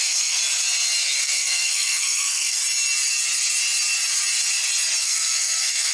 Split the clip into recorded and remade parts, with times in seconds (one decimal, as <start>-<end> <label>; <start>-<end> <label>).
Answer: 0.0-0.4 remade; 0.4-1.2 recorded; 1.2-2.6 remade; 2.6-5.0 recorded; 5.0-5.9 remade